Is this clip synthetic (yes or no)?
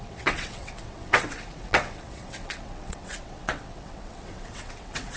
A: yes